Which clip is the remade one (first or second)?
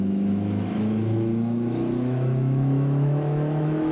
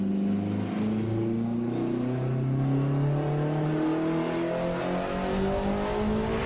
first